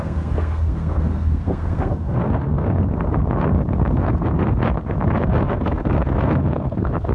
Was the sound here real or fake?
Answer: fake